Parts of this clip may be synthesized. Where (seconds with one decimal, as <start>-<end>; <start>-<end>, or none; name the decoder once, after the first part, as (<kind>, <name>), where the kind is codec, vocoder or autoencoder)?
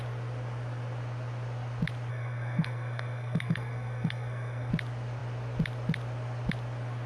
2.1-4.7 (codec, SNAC)